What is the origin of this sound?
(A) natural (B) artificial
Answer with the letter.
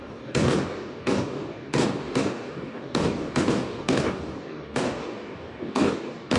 B